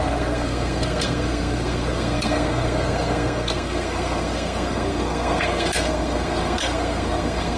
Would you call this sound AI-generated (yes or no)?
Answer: yes